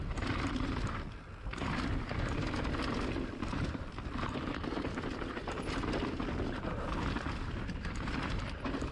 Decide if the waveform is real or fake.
real